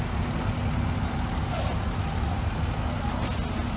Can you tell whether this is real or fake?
real